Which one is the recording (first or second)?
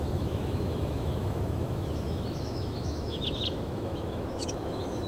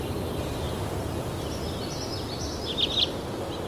second